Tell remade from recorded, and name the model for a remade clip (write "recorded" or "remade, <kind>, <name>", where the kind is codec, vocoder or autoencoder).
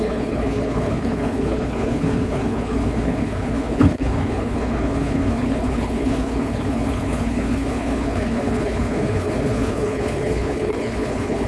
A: remade, codec, HILCodec